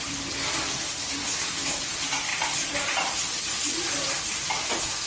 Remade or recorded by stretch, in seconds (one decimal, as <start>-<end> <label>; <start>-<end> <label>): 0.0-1.2 recorded; 1.2-1.8 remade; 1.8-5.1 recorded